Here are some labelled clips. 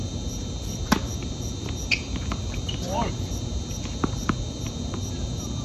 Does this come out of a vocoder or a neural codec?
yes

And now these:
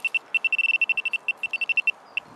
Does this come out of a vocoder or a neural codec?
no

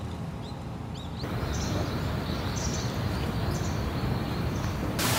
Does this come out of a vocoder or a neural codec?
no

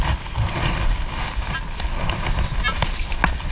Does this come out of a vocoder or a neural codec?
no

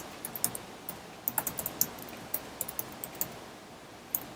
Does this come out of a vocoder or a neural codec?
no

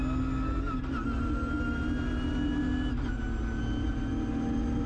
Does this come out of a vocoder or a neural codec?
no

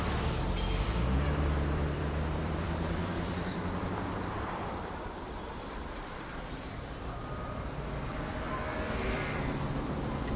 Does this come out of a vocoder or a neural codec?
yes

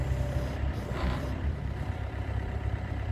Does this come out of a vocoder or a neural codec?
yes